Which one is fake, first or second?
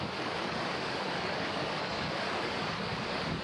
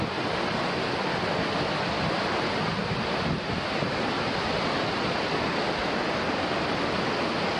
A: first